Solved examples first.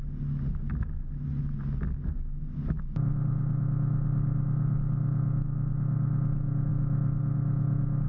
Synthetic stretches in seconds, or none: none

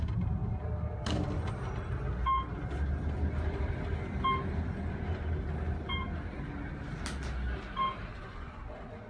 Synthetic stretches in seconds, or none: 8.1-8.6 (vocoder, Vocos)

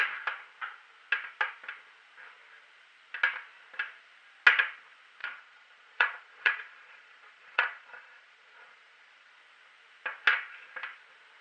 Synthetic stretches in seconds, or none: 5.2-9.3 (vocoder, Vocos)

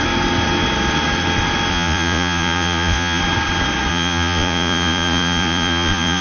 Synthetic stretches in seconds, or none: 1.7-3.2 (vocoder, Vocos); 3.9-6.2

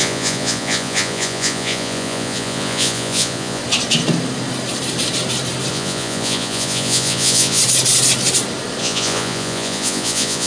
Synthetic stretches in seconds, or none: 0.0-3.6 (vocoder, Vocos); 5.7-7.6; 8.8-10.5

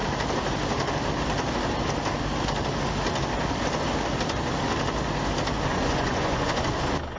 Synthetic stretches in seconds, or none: 5.7-6.6 (vocoder, Vocos)

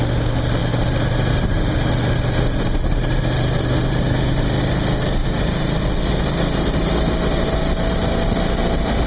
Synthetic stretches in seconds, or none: none

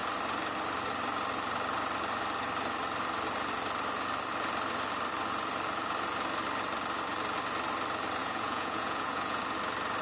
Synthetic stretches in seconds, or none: 8.2-9.4 (vocoder, Vocos)